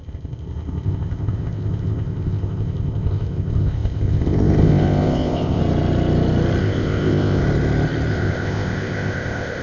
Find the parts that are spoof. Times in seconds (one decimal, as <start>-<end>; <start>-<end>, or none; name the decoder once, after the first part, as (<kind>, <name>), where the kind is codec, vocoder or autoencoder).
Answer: 0.0-5.6 (codec, ZipCodec); 6.6-7.4; 8.1-9.6